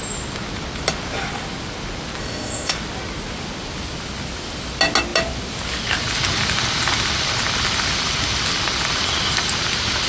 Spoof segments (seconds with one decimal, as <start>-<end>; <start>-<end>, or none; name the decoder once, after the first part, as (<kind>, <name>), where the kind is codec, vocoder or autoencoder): 2.2-2.7 (codec, ZipCodec)